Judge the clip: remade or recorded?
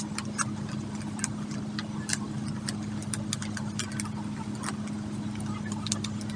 recorded